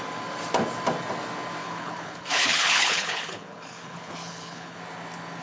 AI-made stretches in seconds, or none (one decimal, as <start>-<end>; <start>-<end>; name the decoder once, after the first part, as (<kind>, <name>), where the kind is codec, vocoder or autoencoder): 1.6-4.8 (codec, HILCodec)